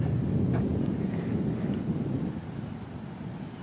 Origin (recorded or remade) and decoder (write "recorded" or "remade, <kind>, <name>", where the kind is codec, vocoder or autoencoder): recorded